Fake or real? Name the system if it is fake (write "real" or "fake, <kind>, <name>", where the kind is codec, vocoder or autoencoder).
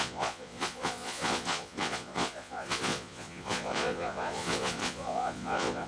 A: fake, vocoder, Vocos